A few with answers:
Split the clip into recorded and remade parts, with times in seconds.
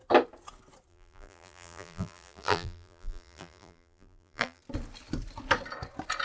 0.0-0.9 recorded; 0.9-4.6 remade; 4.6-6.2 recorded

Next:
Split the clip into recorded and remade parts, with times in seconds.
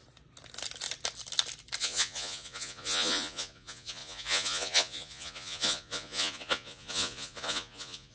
0.0-1.8 recorded; 1.8-8.1 remade